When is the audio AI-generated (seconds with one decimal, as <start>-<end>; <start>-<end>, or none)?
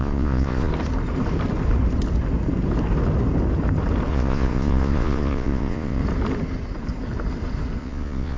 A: 0.0-0.7; 4.1-6.0; 7.8-8.4